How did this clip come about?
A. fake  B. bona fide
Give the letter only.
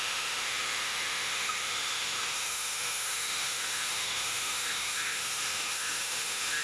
A